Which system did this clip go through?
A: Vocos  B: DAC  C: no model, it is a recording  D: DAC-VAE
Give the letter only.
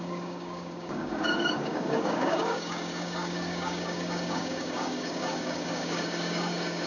B